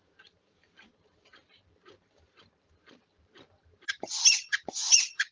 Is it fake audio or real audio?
fake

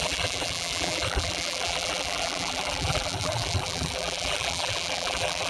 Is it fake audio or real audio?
fake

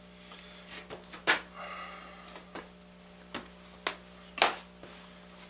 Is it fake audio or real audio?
real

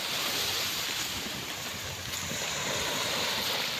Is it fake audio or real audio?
fake